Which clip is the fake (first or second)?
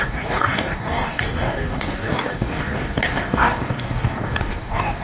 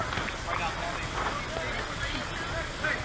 first